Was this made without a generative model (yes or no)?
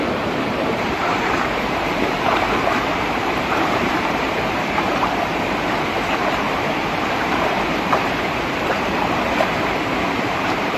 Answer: no